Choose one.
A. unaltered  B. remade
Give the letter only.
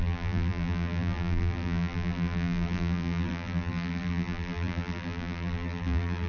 B